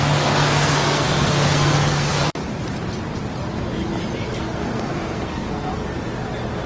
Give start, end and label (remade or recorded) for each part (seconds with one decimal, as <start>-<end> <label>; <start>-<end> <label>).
0.0-2.4 remade; 2.4-4.4 recorded; 4.4-5.7 remade; 5.7-6.7 recorded